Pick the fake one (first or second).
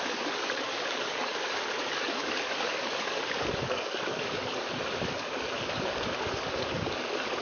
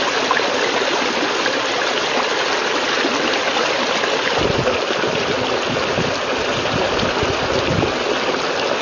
first